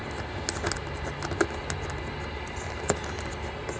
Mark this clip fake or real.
real